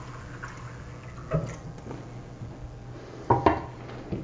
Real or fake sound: real